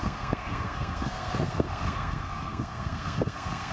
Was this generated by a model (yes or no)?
yes